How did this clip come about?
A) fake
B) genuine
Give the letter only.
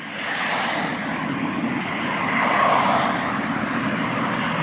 B